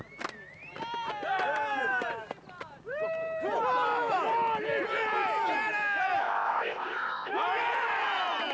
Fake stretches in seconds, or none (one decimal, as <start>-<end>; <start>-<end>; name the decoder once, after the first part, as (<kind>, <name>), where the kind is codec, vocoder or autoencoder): 6.2-7.3 (codec, ZipCodec)